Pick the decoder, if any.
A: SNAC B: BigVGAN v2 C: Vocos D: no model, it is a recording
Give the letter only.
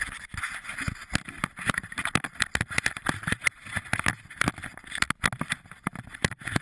D